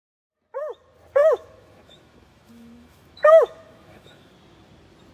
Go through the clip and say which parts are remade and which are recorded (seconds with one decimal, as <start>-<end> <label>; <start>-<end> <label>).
0.0-1.2 recorded; 1.2-4.3 remade; 4.3-5.1 recorded